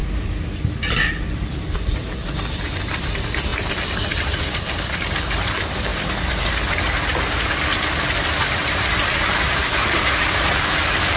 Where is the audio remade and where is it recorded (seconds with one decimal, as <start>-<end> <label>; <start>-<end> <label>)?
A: 0.0-11.2 recorded

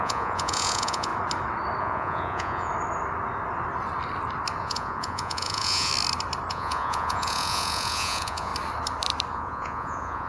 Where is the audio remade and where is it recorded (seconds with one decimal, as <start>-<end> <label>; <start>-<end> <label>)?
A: 0.0-1.1 remade; 1.1-1.8 recorded; 1.8-2.7 remade; 2.7-4.6 recorded; 4.6-5.9 remade; 5.9-6.5 recorded; 6.5-8.5 remade; 8.5-9.3 recorded; 9.3-10.3 remade

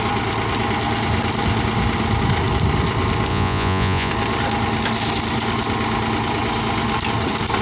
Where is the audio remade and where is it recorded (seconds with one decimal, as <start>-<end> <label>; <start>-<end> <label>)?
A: 0.0-3.3 recorded; 3.3-4.1 remade; 4.1-7.6 recorded

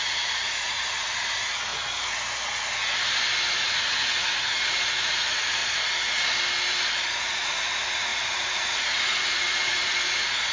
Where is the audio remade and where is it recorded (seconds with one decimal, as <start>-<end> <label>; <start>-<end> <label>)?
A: 0.0-1.7 remade; 1.7-3.5 recorded; 3.5-5.6 remade; 5.6-7.2 recorded; 7.2-10.5 remade

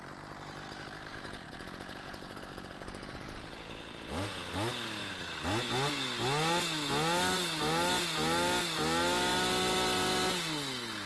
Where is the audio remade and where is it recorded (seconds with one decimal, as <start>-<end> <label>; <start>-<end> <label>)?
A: 0.0-1.1 recorded; 1.1-4.5 remade; 4.5-11.1 recorded

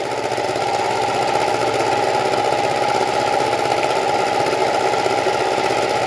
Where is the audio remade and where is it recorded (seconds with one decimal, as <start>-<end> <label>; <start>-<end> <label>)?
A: 0.0-6.1 recorded

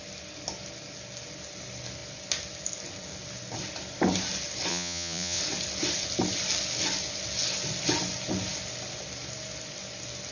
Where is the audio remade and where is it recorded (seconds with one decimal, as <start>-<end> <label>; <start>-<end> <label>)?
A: 0.0-4.7 recorded; 4.7-5.4 remade; 5.4-10.3 recorded